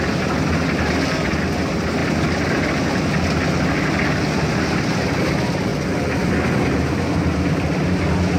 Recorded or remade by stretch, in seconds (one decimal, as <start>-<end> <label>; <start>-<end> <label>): 0.0-8.4 recorded